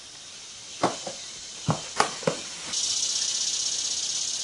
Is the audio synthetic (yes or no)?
no